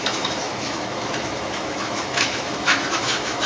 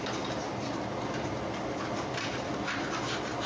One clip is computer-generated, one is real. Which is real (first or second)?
second